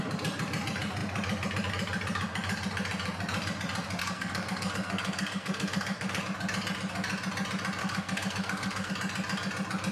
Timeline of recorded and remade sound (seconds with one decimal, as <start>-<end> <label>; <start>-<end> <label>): 0.0-4.0 recorded; 4.0-6.2 remade; 6.2-7.8 recorded; 7.8-8.9 remade; 8.9-9.9 recorded